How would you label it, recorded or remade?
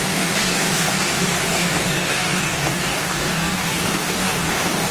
remade